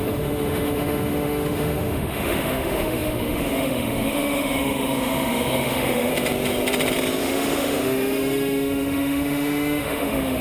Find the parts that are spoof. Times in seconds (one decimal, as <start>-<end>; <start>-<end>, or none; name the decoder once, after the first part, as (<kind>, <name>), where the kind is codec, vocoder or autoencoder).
0.0-6.1 (autoencoder, DAC-VAE); 7.2-10.4